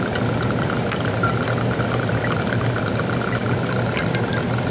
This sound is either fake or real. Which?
real